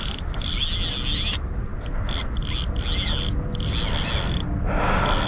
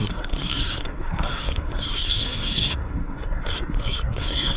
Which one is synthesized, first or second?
second